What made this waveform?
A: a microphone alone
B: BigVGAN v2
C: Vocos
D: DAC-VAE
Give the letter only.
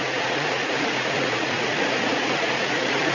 C